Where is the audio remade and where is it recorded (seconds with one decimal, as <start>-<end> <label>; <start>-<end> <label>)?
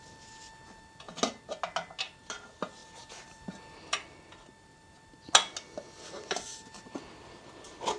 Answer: 0.0-8.0 recorded